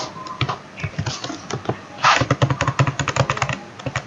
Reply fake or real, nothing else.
real